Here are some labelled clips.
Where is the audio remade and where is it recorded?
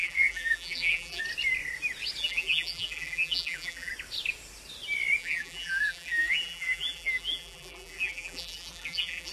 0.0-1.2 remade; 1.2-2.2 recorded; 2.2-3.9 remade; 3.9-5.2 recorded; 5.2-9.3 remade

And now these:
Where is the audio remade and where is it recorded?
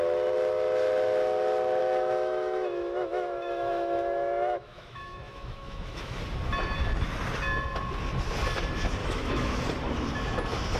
0.0-1.8 recorded; 1.8-6.2 remade; 6.2-9.0 recorded; 9.0-9.6 remade; 9.6-10.8 recorded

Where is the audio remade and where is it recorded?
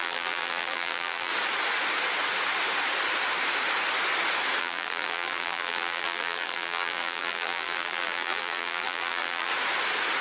0.0-1.3 remade; 1.3-4.6 recorded; 4.6-9.5 remade; 9.5-10.2 recorded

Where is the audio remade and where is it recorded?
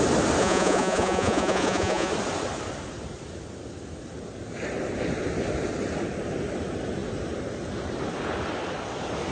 0.0-0.4 recorded; 0.4-2.1 remade; 2.1-9.3 recorded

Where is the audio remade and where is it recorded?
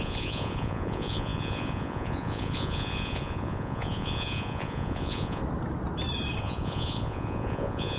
0.0-5.4 remade; 5.4-6.4 recorded; 6.4-8.0 remade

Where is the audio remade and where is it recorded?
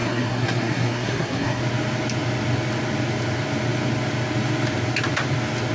0.0-1.6 remade; 1.6-5.7 recorded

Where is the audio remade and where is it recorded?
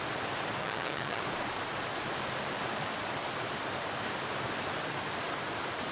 0.0-0.6 recorded; 0.6-1.2 remade; 1.2-5.9 recorded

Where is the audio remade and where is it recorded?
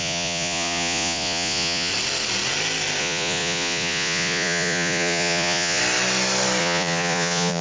0.0-1.9 remade; 1.9-3.0 recorded; 3.0-5.8 remade; 5.8-6.6 recorded; 6.6-7.6 remade